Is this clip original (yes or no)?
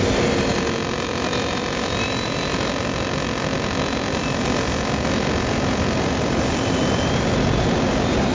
yes